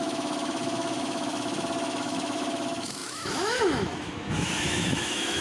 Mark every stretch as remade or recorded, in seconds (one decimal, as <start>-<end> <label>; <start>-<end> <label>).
0.0-5.4 remade